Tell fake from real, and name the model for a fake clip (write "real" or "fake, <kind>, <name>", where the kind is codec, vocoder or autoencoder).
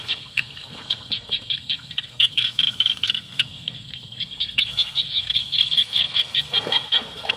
fake, codec, SNAC